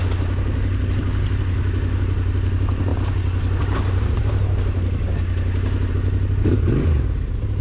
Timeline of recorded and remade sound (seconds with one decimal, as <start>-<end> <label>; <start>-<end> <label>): 0.0-7.6 recorded